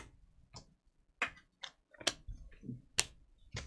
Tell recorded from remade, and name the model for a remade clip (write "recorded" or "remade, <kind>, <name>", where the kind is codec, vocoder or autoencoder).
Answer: recorded